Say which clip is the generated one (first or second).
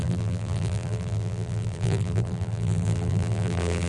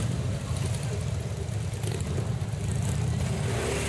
first